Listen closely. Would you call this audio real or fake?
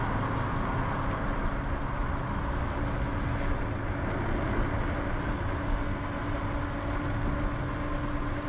real